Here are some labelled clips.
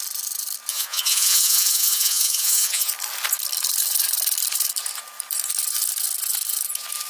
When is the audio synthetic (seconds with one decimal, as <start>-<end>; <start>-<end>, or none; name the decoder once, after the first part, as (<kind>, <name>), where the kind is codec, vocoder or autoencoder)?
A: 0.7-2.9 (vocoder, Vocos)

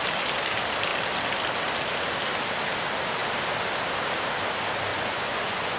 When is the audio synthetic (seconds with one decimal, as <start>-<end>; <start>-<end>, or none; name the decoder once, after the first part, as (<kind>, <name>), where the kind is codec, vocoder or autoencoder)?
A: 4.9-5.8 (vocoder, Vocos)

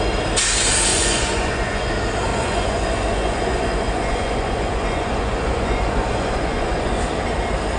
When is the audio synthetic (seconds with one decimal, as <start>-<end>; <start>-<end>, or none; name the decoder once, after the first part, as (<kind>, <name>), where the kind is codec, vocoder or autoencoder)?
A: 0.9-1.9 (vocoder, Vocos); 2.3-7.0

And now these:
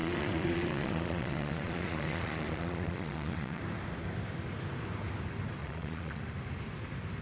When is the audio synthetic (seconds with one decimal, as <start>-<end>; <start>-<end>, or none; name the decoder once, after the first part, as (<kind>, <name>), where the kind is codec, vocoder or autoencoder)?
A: 0.0-3.6 (vocoder, Vocos); 5.6-6.2